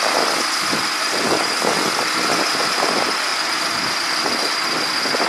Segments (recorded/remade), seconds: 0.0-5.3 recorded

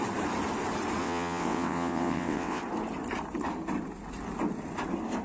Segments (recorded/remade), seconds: 0.0-1.0 recorded; 1.0-2.6 remade; 2.6-5.2 recorded

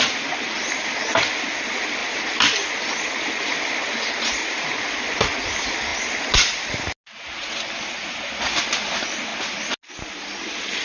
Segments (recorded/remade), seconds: 0.0-10.8 recorded

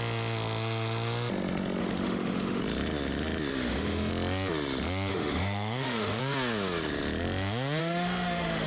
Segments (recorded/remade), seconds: 0.0-1.8 recorded; 1.8-2.6 remade; 2.6-3.5 recorded; 3.5-4.1 remade; 4.1-5.1 recorded; 5.1-6.2 remade; 6.2-7.8 recorded; 7.8-8.7 remade

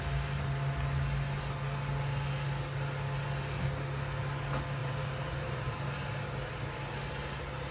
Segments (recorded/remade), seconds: 0.0-4.8 recorded; 4.8-5.7 remade; 5.7-7.7 recorded

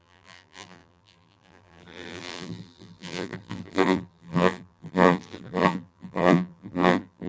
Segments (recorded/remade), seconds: 0.0-7.3 remade

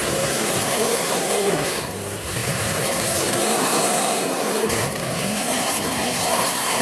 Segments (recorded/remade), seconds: 0.0-6.8 remade